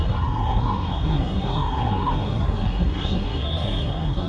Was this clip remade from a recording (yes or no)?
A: yes